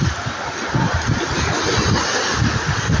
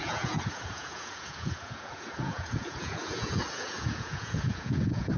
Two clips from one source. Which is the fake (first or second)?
second